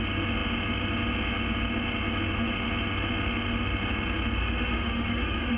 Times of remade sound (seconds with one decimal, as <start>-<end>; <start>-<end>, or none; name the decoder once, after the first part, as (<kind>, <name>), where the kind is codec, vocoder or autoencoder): 4.4-5.6 (autoencoder, DAC-VAE)

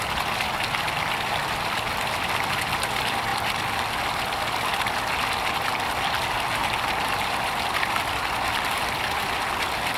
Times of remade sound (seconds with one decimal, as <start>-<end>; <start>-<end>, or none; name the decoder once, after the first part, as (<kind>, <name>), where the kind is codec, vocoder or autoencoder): none

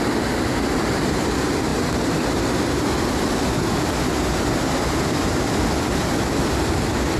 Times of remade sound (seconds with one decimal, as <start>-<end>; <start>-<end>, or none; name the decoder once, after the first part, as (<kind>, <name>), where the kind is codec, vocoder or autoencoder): none

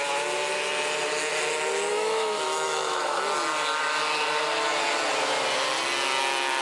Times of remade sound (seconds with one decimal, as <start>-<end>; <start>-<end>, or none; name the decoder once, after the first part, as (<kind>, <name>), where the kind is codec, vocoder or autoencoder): 1.9-3.2 (autoencoder, DAC-VAE)